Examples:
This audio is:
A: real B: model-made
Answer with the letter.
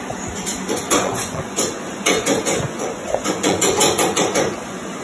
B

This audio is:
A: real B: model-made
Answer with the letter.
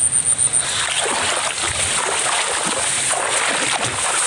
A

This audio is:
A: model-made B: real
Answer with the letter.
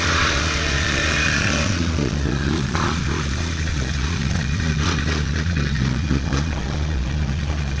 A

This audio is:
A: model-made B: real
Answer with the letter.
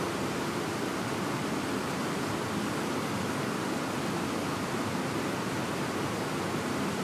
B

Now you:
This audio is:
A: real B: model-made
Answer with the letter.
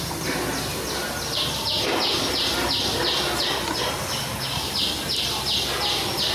A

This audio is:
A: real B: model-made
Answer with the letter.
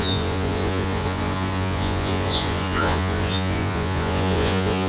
B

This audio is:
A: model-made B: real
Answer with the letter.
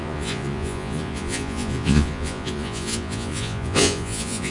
A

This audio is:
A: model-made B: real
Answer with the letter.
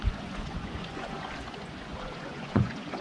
A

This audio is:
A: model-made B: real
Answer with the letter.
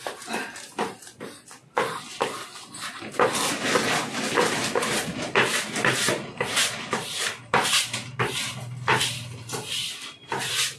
B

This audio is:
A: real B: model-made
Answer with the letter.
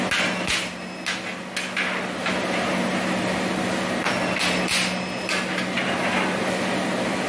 A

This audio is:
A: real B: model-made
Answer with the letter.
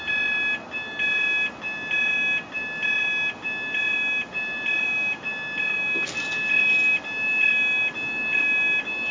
A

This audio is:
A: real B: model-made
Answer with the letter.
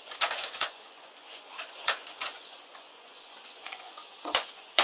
B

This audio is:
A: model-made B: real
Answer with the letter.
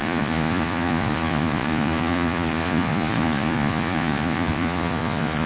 A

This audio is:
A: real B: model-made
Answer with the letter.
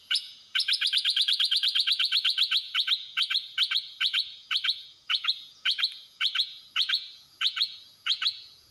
B